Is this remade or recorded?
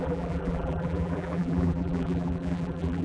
remade